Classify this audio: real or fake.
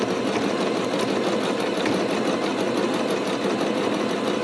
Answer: real